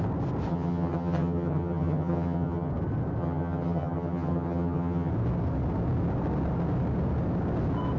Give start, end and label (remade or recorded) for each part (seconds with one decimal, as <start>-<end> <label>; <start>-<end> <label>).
0.0-0.5 recorded; 0.5-2.7 remade; 2.7-3.2 recorded; 3.2-5.1 remade; 5.1-8.0 recorded